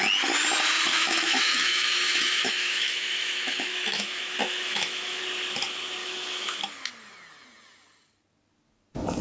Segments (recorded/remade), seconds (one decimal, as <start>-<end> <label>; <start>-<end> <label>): 0.0-0.9 recorded; 0.9-5.2 remade; 5.2-6.0 recorded; 6.0-6.6 remade; 6.6-9.2 recorded